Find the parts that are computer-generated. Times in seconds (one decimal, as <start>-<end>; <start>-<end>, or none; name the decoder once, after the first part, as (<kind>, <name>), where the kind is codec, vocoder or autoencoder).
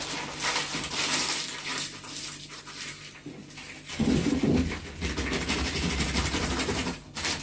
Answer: none